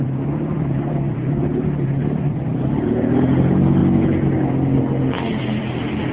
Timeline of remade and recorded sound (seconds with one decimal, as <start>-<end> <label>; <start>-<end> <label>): 0.0-3.8 remade; 3.8-5.3 recorded; 5.3-6.1 remade